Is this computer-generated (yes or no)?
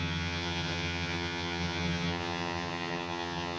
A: yes